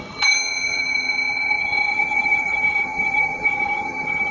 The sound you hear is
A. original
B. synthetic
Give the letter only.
B